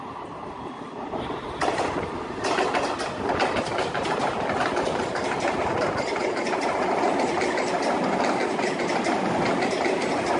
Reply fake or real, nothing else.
fake